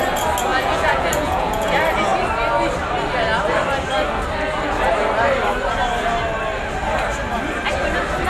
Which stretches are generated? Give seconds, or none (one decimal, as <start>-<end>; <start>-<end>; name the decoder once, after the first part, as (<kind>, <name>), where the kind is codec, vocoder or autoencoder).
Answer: 0.5-1.7 (vocoder, Vocos)